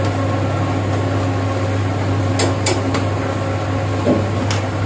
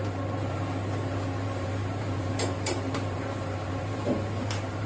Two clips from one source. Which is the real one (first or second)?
first